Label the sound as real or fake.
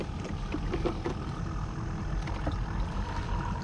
real